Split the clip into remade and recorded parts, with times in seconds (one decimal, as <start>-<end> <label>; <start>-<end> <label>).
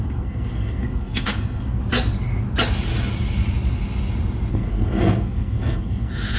0.0-1.8 remade; 1.8-4.5 recorded; 4.5-6.4 remade